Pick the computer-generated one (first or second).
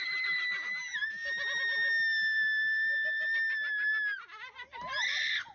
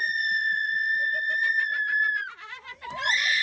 second